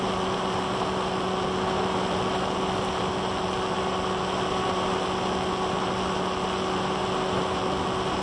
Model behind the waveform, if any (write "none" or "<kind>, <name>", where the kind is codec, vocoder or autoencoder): none